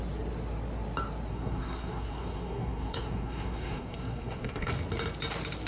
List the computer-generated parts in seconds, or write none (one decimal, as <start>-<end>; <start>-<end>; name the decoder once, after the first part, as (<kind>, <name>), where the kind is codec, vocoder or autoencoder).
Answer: 1.3-4.7 (codec, SNAC)